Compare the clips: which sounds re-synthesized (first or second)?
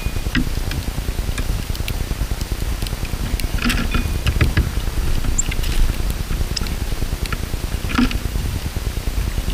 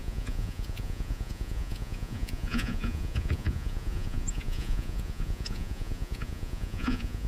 second